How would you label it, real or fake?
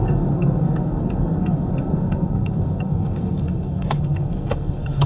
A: fake